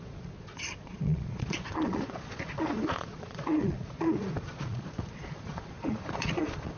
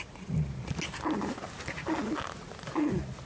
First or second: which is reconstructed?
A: first